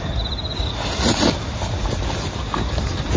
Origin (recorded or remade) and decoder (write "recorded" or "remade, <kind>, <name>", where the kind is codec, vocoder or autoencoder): recorded